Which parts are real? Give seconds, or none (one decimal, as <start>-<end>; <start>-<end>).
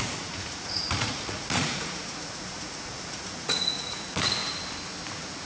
4.4-5.1